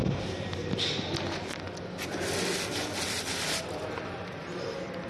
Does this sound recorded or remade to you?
recorded